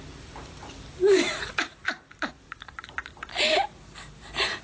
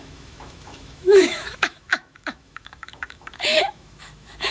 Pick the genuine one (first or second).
first